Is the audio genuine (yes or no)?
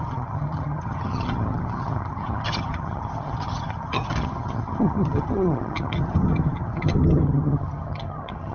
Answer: no